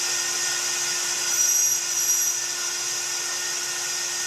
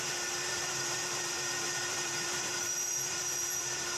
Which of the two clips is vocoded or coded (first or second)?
second